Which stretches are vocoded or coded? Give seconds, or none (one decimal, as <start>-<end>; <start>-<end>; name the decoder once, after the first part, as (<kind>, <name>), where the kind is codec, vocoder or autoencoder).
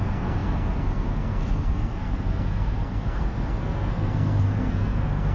0.0-5.3 (codec, SNAC)